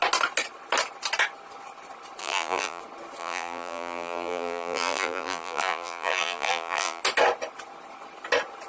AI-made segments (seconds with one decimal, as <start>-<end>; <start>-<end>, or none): 2.2-2.8; 3.2-7.0